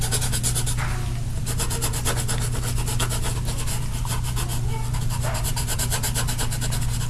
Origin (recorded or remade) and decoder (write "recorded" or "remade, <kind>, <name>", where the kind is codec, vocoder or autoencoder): recorded